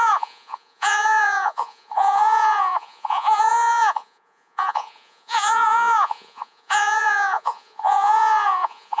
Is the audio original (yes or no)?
no